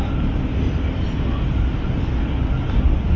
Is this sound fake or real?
real